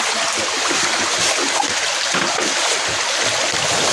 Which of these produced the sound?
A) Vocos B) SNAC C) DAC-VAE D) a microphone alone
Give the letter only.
D